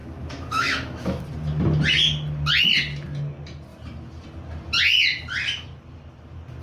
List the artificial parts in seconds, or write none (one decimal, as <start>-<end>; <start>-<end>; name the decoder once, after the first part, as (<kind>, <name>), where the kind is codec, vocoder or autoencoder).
0.0-1.2 (autoencoder, DAC-VAE)